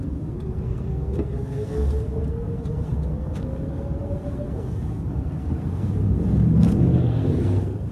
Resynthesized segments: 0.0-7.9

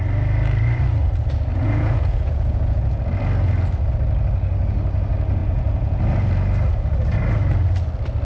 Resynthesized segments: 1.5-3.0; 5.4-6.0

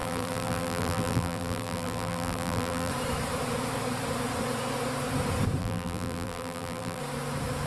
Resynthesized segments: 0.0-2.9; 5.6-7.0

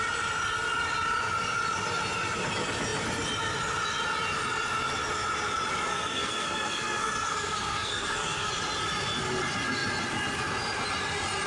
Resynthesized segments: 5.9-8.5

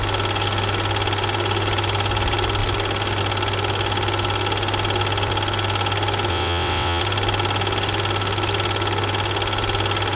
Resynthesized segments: 6.3-7.0

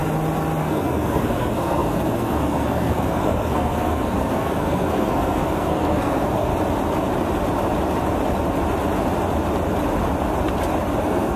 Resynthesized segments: 0.6-6.5; 11.0-11.4